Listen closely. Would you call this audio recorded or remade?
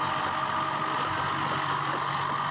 recorded